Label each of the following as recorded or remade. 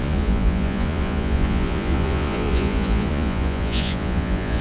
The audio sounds remade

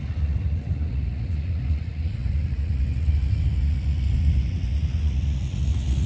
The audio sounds remade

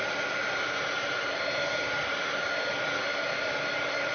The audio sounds recorded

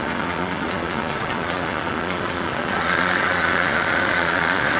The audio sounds remade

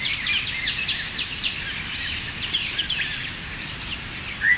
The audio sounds recorded